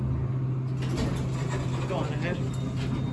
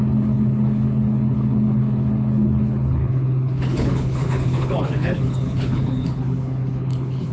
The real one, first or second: first